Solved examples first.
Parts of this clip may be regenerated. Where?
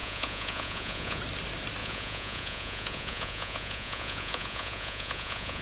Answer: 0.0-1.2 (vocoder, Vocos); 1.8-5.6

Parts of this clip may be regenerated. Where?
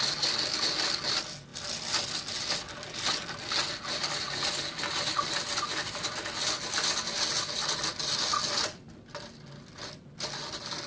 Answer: none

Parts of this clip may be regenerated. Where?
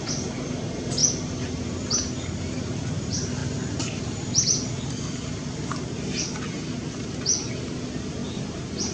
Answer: none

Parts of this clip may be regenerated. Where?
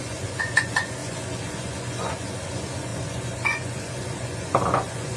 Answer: 0.0-5.2 (vocoder, Vocos)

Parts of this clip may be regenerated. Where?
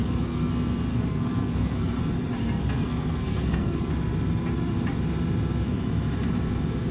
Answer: 0.0-0.5 (codec, SNAC); 0.9-2.0; 2.4-3.9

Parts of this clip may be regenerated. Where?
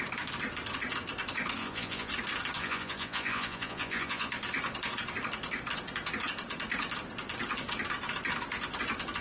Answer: 1.6-2.1 (vocoder, Vocos); 2.6-4.3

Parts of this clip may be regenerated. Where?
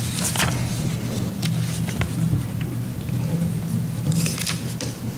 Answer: none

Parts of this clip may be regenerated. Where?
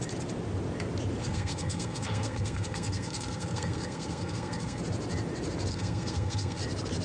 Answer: 1.2-4.8 (codec, SNAC); 5.7-6.6